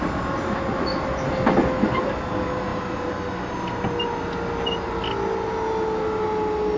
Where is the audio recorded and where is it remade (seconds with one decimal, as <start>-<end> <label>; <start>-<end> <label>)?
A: 0.0-6.8 recorded

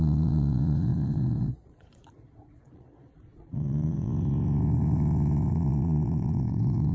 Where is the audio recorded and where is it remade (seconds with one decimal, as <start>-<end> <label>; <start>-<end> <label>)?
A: 0.0-4.1 remade; 4.1-5.5 recorded; 5.5-6.9 remade

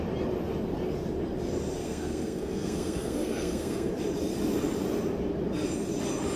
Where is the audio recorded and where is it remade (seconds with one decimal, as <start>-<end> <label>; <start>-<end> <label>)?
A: 0.0-1.8 recorded; 1.8-3.9 remade; 3.9-6.4 recorded

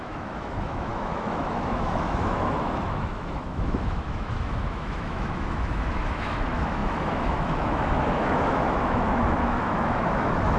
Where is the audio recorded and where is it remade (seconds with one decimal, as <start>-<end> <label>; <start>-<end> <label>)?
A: 0.0-10.6 remade

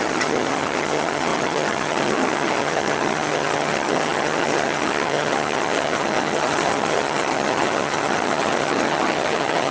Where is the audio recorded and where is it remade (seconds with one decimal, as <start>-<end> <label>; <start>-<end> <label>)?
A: 0.0-9.7 remade

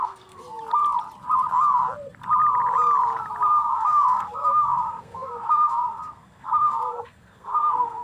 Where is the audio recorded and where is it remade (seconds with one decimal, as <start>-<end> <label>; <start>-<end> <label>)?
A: 0.0-0.4 remade; 0.4-3.6 recorded; 3.6-8.0 remade

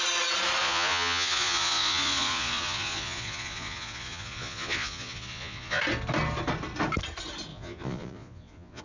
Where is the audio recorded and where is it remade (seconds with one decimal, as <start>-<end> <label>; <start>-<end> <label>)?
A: 0.0-0.6 recorded; 0.6-5.8 remade; 5.8-7.5 recorded; 7.5-8.8 remade

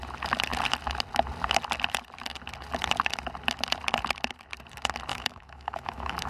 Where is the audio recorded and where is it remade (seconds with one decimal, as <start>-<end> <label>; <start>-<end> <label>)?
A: 0.0-5.1 recorded; 5.1-6.3 remade